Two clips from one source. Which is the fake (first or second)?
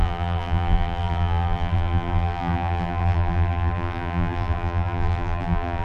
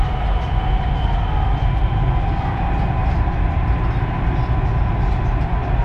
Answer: first